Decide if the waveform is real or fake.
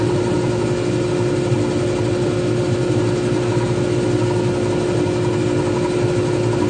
real